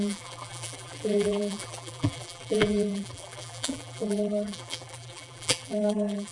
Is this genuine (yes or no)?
no